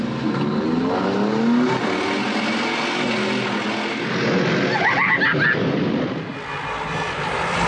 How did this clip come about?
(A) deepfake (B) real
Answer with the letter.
B